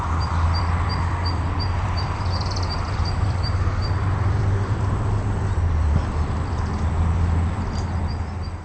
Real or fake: fake